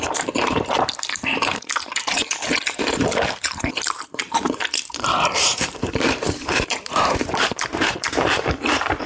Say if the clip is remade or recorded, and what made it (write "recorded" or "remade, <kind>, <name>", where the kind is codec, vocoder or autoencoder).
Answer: remade, vocoder, BigVGAN v2